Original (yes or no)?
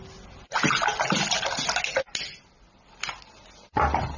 yes